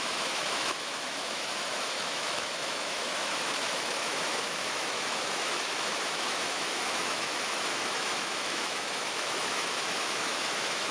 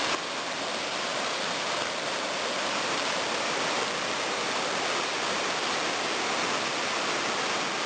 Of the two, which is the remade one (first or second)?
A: first